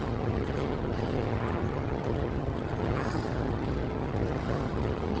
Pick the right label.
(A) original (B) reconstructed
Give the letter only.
B